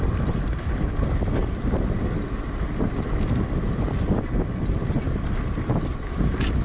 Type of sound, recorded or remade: recorded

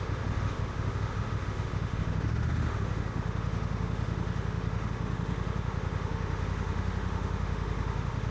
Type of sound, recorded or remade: remade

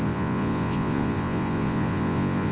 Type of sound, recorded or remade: remade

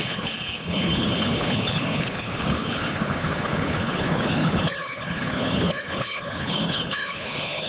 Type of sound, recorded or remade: remade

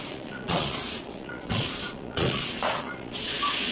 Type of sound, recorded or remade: remade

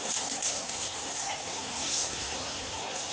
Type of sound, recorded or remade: remade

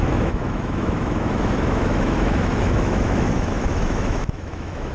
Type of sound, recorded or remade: remade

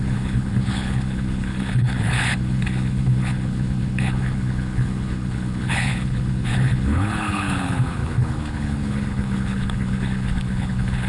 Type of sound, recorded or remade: remade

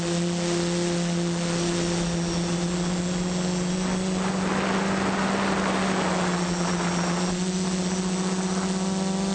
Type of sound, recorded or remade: recorded